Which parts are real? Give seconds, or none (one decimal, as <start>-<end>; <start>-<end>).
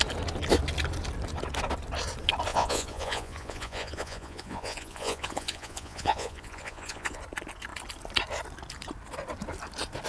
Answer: 0.0-2.5; 7.2-10.1